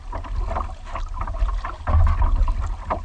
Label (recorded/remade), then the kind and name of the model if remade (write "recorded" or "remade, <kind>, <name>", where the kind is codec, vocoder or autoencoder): recorded